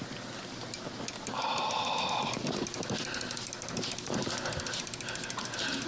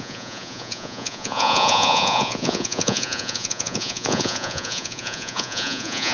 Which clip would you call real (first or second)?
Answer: first